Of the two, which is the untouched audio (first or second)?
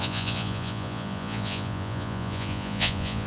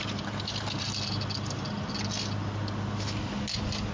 second